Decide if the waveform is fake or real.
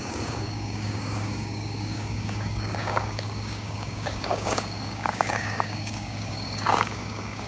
fake